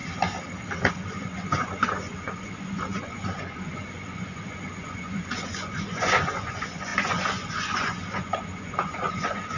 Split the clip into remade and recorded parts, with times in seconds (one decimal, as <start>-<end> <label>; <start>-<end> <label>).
0.0-0.9 recorded; 0.9-9.6 remade